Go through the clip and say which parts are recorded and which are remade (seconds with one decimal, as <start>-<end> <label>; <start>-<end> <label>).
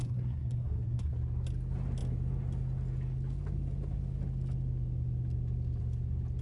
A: 0.0-1.1 remade; 1.1-6.4 recorded